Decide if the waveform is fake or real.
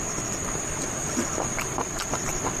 real